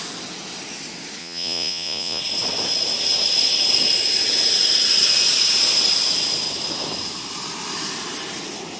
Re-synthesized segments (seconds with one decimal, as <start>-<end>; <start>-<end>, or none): 1.2-2.2